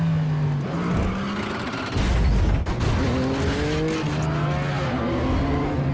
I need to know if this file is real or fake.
real